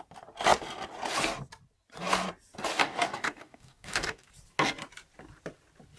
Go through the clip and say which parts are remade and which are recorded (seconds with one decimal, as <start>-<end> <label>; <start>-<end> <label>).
0.0-2.8 recorded; 2.8-4.3 remade; 4.3-6.0 recorded